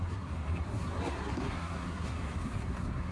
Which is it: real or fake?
fake